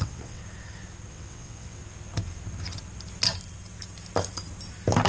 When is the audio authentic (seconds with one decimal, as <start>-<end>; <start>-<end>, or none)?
0.4-1.1; 1.8-5.1